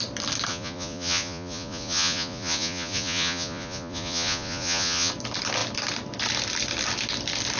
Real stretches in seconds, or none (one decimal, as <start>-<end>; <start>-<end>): 0.0-0.5; 5.1-7.6